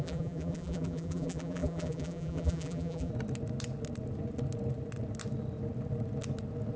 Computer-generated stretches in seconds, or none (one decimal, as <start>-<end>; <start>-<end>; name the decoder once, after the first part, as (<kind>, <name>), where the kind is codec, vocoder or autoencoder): 0.0-3.1 (vocoder, BigVGAN v2)